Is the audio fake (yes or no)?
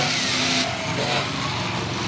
no